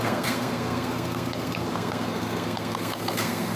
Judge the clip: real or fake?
fake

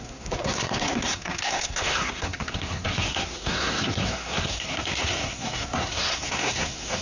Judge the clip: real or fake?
fake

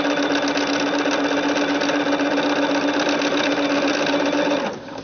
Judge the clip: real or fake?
real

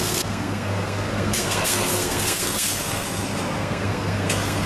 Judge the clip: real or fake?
fake